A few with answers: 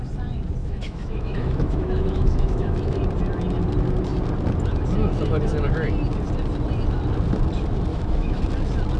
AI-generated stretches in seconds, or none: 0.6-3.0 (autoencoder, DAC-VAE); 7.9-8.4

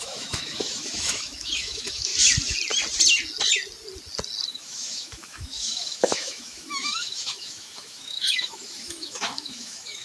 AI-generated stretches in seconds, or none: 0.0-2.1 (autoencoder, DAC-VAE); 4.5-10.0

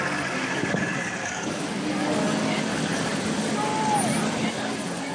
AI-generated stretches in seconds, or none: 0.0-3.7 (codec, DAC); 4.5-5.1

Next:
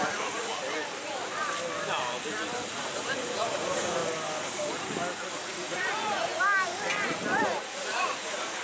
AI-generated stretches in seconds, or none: 0.0-0.5 (vocoder, Vocos); 2.7-4.0; 5.3-6.3; 7.3-8.6